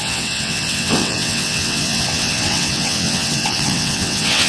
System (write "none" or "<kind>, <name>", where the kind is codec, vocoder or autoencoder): vocoder, WaveNeXt